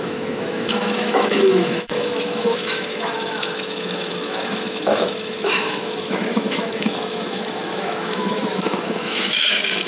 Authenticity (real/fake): fake